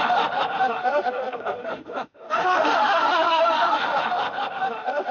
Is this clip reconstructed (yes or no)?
yes